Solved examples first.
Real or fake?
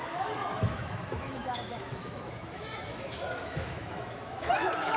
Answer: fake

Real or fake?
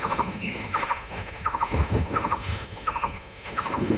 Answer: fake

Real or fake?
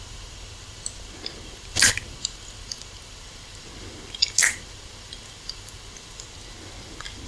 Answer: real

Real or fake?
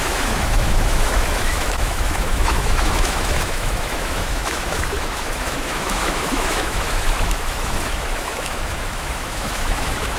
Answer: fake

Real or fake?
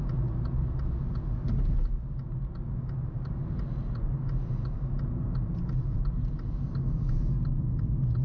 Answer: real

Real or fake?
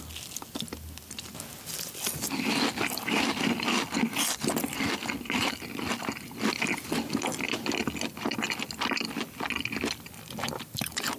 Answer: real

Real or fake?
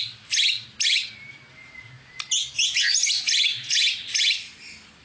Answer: real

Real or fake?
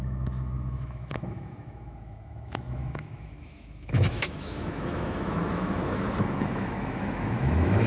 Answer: fake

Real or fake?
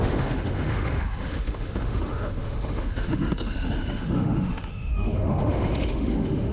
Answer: fake